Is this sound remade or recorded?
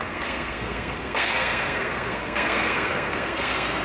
remade